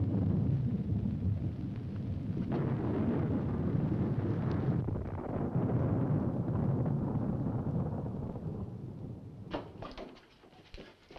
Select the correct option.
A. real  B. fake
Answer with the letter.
A